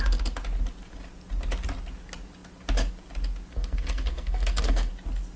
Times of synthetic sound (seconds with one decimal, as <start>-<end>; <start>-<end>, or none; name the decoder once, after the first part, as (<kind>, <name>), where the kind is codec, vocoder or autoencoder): 3.5-4.9 (codec, SNAC)

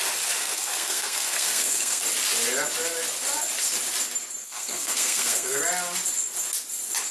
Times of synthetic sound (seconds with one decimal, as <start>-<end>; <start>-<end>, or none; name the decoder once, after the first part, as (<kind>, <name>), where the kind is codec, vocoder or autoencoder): 0.4-2.0 (codec, SNAC); 4.4-5.6

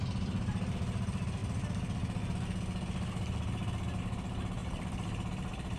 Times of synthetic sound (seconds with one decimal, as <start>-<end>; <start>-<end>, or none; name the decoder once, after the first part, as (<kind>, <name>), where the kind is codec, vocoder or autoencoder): 4.6-5.8 (vocoder, BigVGAN v2)